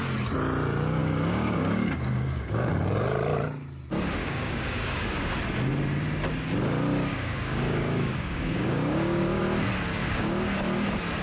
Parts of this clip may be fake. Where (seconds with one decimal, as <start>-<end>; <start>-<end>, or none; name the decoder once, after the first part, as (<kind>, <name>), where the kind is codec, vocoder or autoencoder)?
1.0-2.7 (codec, DAC); 4.2-5.3; 7.1-9.4; 10.0-10.6